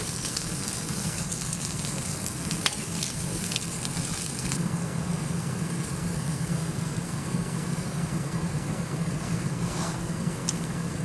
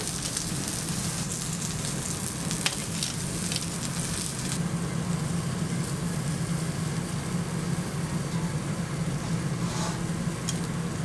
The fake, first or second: first